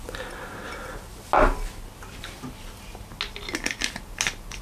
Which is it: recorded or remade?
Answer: recorded